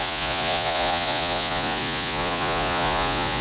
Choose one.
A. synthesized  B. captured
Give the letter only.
A